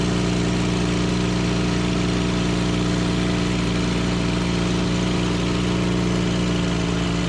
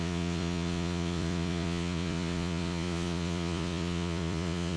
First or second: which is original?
first